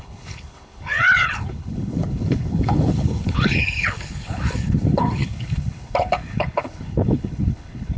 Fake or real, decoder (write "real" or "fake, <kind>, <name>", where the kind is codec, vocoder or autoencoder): fake, codec, HILCodec